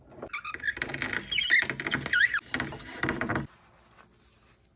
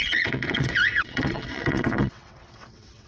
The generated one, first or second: second